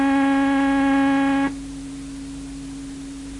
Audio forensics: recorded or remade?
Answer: recorded